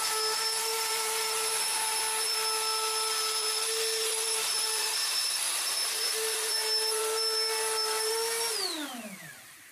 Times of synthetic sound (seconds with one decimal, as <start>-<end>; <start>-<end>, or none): 0.6-1.5; 4.0-8.1